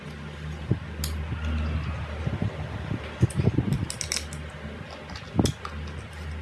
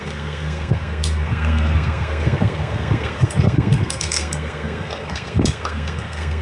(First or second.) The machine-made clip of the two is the second